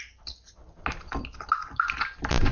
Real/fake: real